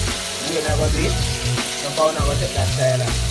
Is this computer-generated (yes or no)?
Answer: yes